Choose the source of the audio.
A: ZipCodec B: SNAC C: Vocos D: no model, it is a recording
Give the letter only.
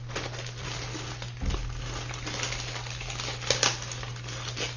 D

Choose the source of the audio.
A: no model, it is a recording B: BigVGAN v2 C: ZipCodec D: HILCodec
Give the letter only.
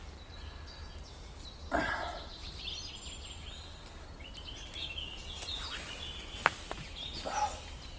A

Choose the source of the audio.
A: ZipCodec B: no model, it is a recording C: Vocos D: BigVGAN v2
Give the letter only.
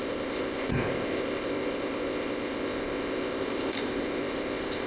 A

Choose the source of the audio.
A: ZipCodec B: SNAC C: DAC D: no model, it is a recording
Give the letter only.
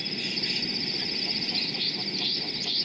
D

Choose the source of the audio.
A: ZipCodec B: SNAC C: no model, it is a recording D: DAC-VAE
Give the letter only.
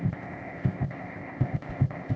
A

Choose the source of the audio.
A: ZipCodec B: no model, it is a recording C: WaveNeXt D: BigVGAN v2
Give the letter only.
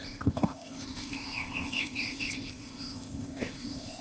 A